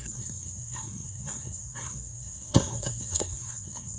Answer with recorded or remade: remade